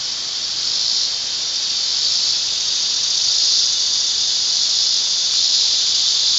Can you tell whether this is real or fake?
real